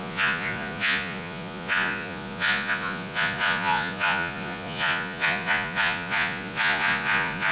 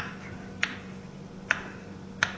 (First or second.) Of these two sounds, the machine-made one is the first